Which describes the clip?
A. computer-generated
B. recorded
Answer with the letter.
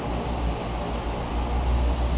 B